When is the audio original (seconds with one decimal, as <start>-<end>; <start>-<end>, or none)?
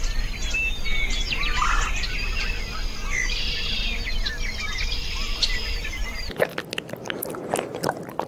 0.0-8.3